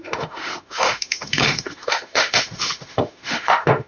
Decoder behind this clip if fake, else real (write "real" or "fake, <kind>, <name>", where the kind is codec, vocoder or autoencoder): fake, autoencoder, DAC-VAE